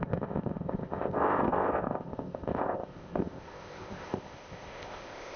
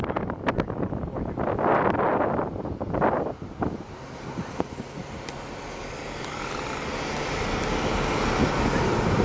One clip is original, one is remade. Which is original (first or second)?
second